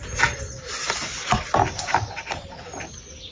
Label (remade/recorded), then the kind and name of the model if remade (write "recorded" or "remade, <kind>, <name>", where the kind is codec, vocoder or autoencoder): recorded